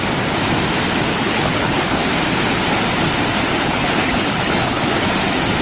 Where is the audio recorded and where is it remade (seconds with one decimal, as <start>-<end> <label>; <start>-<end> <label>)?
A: 0.0-1.1 recorded; 1.1-2.1 remade; 2.1-3.6 recorded; 3.6-5.1 remade; 5.1-5.6 recorded